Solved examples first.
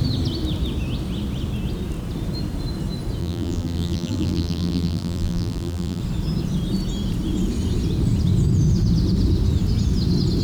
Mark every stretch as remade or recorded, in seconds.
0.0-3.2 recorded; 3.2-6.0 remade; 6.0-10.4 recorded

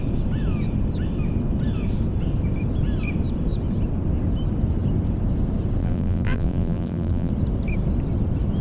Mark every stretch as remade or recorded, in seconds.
0.0-5.8 recorded; 5.8-7.3 remade; 7.3-8.6 recorded

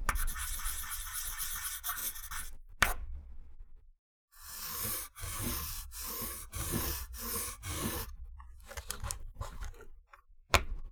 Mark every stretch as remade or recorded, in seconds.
0.0-2.0 remade; 2.0-2.8 recorded; 2.8-10.9 remade

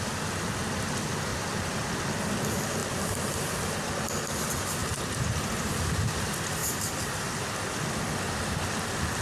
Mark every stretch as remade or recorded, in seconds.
0.0-4.8 recorded; 4.8-5.5 remade; 5.5-6.6 recorded; 6.6-7.3 remade; 7.3-9.2 recorded

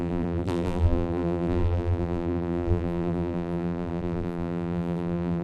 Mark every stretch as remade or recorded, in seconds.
0.0-5.4 remade

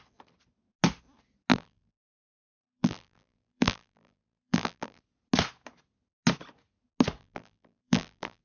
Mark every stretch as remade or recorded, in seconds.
0.0-1.5 recorded; 1.5-5.0 remade; 5.0-7.2 recorded; 7.2-8.4 remade